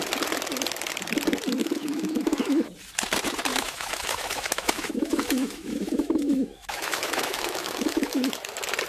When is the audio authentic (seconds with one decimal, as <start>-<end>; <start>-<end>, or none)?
0.0-1.6; 2.7-3.5; 8.3-8.9